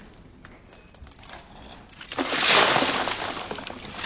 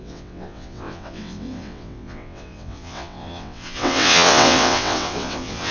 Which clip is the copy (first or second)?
second